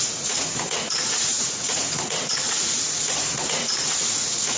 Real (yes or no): no